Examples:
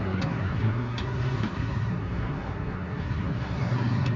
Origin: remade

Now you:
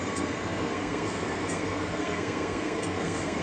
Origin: remade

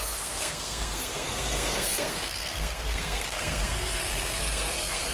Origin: remade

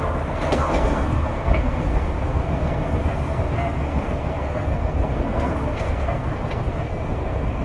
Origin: remade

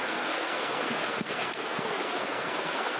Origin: remade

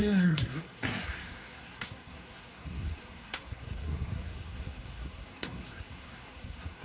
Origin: remade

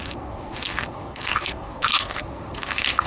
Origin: remade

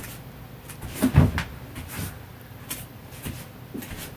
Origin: recorded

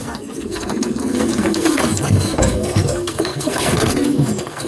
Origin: remade